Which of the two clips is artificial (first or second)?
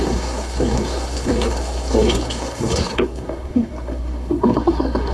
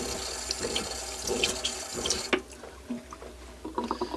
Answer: first